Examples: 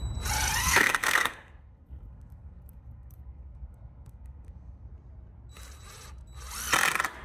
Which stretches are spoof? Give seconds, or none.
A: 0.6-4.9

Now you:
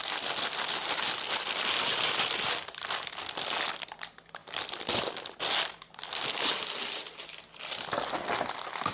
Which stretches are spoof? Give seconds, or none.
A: none

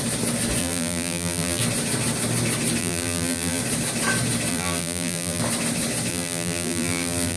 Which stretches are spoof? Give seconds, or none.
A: 0.6-1.6; 2.8-3.6; 4.5-5.4; 6.1-7.4

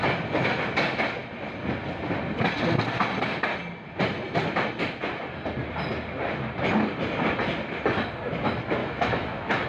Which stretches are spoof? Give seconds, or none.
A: 8.8-9.7